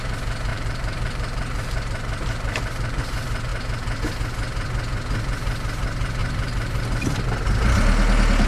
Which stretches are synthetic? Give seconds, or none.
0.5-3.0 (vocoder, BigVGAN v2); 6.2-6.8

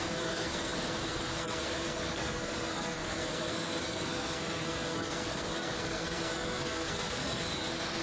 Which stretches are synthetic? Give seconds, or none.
0.0-8.0 (codec, SNAC)

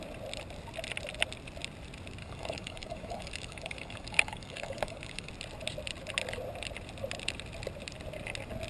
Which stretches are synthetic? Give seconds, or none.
2.2-5.3 (codec, DAC)